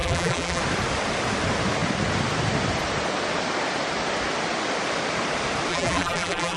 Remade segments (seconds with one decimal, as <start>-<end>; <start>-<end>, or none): 0.0-0.6; 5.7-6.6